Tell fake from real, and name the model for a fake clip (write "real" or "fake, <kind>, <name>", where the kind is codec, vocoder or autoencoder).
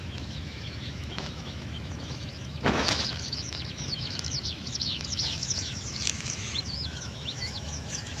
fake, autoencoder, DAC-VAE